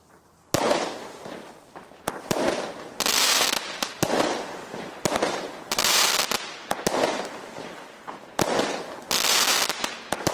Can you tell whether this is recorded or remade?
recorded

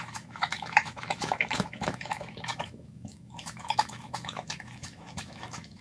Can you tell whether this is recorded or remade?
remade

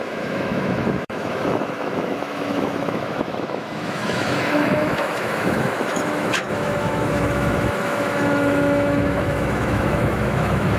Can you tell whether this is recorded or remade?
remade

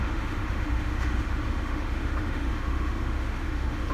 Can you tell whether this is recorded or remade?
remade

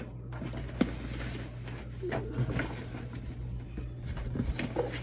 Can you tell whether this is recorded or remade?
recorded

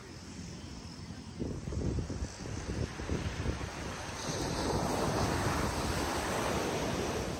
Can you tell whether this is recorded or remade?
recorded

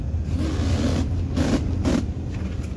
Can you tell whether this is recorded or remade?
recorded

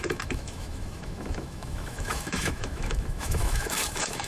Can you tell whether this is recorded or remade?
remade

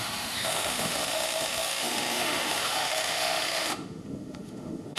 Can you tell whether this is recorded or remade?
remade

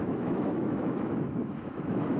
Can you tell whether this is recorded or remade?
remade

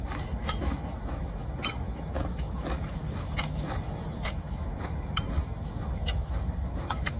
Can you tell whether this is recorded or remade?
remade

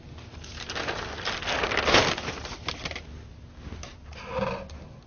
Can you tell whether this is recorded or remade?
recorded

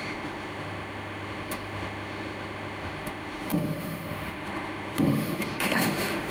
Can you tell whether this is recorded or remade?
remade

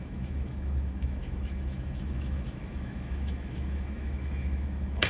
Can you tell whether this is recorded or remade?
remade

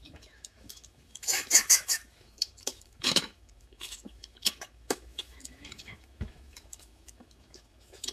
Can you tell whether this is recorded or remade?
remade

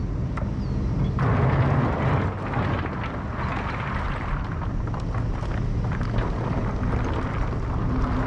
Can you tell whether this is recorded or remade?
recorded